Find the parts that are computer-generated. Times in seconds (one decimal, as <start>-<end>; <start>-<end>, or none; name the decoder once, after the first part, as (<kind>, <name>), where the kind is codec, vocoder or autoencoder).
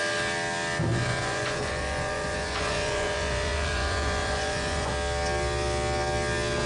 0.9-4.9 (vocoder, Vocos)